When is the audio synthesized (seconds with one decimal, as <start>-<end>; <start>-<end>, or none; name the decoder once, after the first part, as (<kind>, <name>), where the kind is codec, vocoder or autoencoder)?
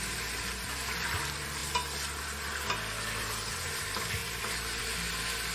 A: 0.0-1.6 (vocoder, BigVGAN v2); 3.7-5.5